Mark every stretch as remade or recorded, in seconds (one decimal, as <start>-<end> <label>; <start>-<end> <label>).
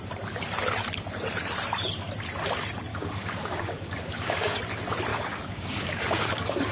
0.0-2.9 recorded; 2.9-4.6 remade; 4.6-5.1 recorded; 5.1-6.7 remade